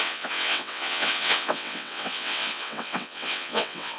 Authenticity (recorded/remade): remade